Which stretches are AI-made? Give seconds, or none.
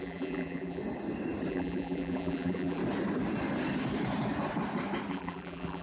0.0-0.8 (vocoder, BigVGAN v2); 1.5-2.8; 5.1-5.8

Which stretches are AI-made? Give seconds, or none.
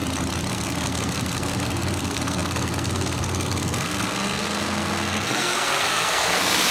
0.5-6.7 (codec, SNAC)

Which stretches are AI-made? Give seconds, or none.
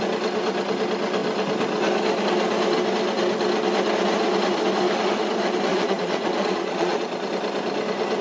5.7-7.3 (vocoder, Vocos)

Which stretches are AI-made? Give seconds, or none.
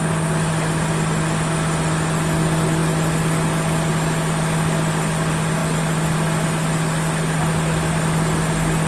none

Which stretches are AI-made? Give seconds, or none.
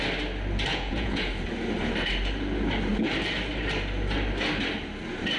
0.7-1.3 (vocoder, Vocos)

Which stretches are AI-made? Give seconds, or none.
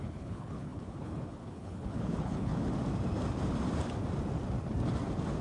0.0-2.5 (codec, HILCodec)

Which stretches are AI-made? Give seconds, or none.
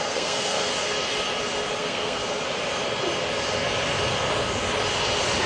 0.0-0.7 (codec, SNAC); 1.8-2.2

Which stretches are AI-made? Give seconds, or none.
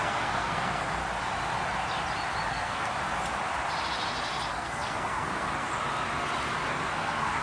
0.0-1.0 (codec, SNAC); 2.5-2.9; 4.5-5.7; 6.7-7.4